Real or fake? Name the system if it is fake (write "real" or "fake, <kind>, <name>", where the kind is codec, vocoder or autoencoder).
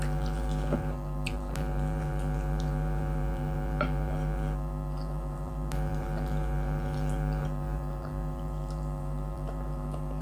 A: fake, vocoder, BigVGAN v2